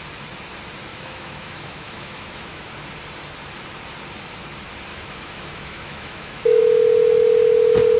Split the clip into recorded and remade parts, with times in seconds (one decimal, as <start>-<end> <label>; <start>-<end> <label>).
0.0-0.9 recorded; 0.9-2.7 remade; 2.7-4.9 recorded; 4.9-6.6 remade; 6.6-8.0 recorded